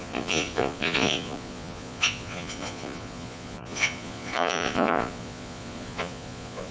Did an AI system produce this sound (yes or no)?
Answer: yes